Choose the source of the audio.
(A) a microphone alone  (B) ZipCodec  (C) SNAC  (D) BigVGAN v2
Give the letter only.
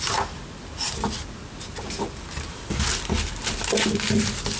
A